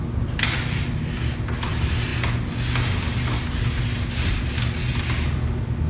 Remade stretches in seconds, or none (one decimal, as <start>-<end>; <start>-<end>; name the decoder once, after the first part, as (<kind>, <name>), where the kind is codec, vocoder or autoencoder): none